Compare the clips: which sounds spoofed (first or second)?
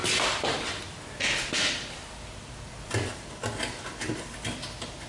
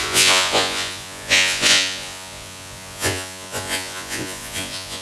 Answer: second